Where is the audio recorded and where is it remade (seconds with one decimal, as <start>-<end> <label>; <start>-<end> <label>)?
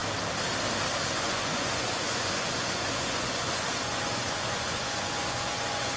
0.0-1.0 recorded; 1.0-6.0 remade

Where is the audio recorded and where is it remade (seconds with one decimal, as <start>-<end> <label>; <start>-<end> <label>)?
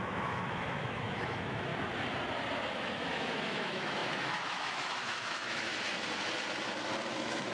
0.0-1.7 remade; 1.7-2.7 recorded; 2.7-5.7 remade; 5.7-7.1 recorded; 7.1-7.5 remade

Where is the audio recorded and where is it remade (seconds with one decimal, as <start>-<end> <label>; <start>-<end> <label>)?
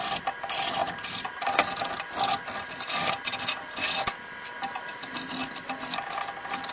0.0-6.7 recorded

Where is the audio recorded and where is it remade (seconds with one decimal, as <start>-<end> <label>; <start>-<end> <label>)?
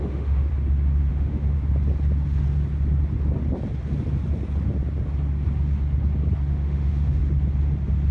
0.0-0.5 remade; 0.5-1.1 recorded; 1.1-1.6 remade; 1.6-6.5 recorded; 6.5-7.2 remade; 7.2-8.1 recorded